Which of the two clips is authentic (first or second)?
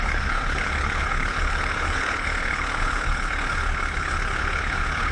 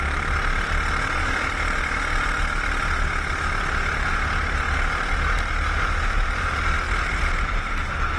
second